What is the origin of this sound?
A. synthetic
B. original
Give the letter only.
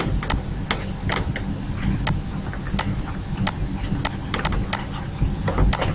B